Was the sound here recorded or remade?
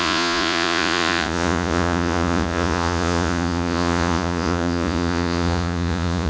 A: remade